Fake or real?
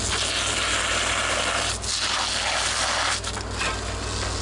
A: real